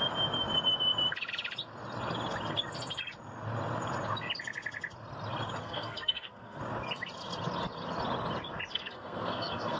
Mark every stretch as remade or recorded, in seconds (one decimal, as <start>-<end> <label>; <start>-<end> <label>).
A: 0.0-5.6 recorded; 5.6-6.6 remade; 6.6-8.7 recorded; 8.7-9.8 remade